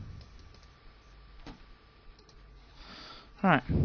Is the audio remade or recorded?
remade